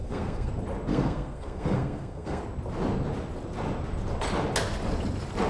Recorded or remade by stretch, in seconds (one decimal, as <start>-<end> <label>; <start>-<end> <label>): 0.0-0.5 remade; 0.5-0.9 recorded; 0.9-2.4 remade; 2.4-5.5 recorded